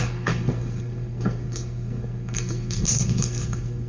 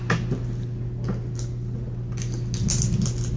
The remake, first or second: first